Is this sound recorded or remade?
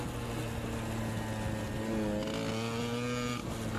recorded